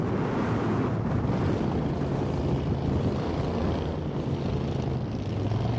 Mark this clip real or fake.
real